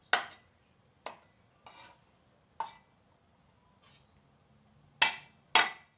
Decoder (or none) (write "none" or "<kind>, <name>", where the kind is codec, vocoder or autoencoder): none